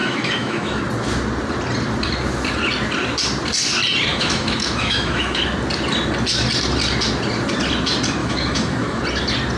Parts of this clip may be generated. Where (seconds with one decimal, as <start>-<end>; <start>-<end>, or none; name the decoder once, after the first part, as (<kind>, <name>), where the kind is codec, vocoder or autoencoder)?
0.0-0.8 (autoencoder, DAC-VAE); 4.1-5.4; 8.2-9.0